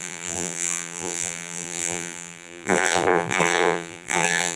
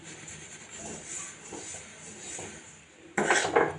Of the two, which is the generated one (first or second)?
first